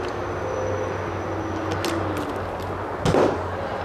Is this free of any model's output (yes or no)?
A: yes